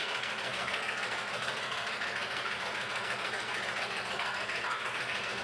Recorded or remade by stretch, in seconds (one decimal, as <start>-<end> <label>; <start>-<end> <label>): 0.0-5.4 remade